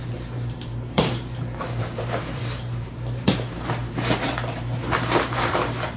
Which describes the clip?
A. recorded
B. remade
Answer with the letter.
B